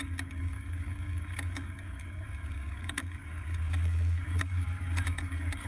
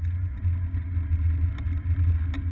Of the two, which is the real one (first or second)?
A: second